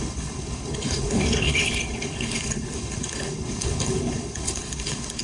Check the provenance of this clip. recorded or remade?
remade